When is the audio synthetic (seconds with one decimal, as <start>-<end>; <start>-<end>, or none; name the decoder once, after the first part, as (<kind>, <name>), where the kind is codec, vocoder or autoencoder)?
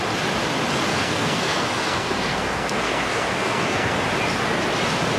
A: 0.9-4.0 (codec, SNAC)